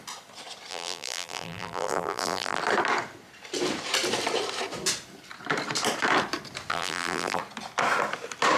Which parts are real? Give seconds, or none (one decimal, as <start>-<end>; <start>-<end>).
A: 0.0-0.7; 2.6-6.7; 7.4-8.6